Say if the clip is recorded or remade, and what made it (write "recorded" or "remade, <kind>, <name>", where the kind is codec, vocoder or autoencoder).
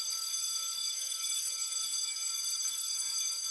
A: remade, codec, SNAC